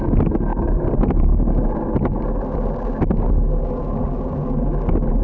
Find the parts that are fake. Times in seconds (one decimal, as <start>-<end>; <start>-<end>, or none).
none